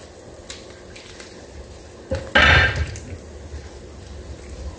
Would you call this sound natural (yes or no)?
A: yes